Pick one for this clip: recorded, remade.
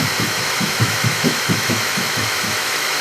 remade